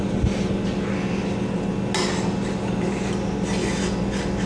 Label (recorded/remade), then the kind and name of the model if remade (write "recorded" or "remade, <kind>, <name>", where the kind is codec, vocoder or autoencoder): recorded